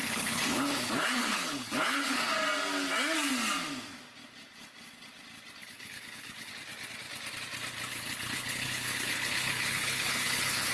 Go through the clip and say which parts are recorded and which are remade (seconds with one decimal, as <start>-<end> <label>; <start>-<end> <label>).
0.0-2.3 remade; 2.3-5.6 recorded; 5.6-6.5 remade; 6.5-7.9 recorded; 7.9-10.7 remade